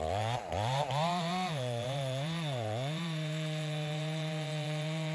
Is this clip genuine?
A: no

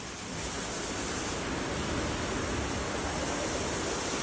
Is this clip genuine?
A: yes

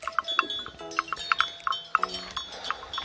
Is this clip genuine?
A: yes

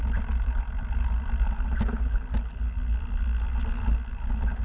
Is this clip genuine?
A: yes